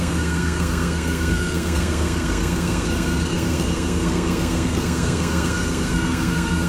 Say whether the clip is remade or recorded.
remade